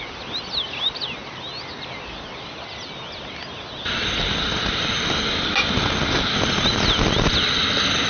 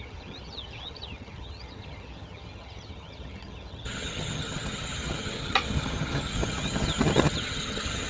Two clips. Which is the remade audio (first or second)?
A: second